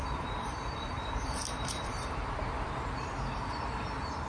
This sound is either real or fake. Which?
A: fake